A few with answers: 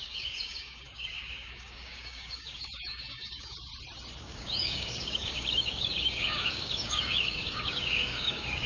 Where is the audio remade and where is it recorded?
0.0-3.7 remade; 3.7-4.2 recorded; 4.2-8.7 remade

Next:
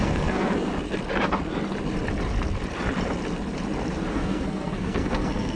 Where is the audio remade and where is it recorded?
0.0-0.7 remade; 0.7-4.1 recorded; 4.1-5.6 remade

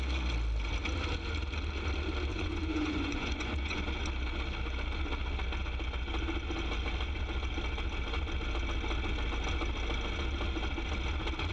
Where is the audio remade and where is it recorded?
0.0-2.3 recorded; 2.3-3.8 remade; 3.8-11.5 recorded

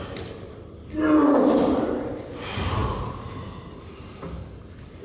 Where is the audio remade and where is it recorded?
0.0-5.0 recorded

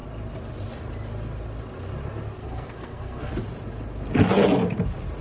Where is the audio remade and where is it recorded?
0.0-2.4 recorded; 2.4-3.3 remade; 3.3-5.2 recorded